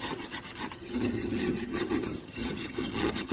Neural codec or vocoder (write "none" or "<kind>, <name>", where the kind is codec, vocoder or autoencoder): vocoder, HiFi-GAN